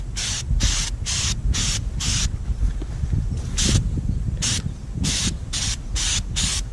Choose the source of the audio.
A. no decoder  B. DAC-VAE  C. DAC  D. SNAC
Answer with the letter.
A